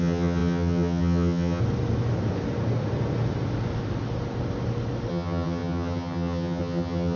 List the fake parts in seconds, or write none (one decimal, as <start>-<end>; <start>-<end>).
0.0-1.6; 5.1-7.2